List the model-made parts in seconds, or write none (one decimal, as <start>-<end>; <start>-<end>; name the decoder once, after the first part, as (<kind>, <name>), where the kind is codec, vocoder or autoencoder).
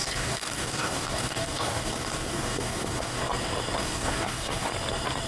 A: 0.0-3.2 (codec, DAC); 3.8-4.7